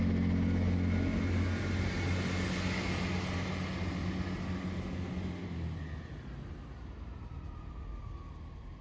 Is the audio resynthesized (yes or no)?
no